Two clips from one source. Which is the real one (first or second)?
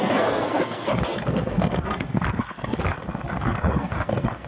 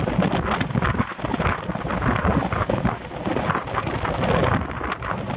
second